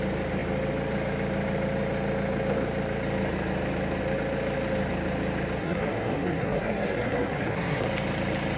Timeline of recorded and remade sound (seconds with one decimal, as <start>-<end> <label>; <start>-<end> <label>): 0.0-5.6 recorded; 5.6-7.8 remade; 7.8-8.6 recorded